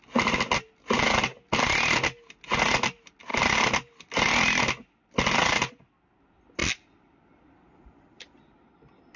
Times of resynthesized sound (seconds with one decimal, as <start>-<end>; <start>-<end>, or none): none